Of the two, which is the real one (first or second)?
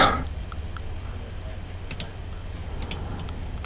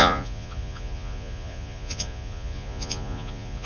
first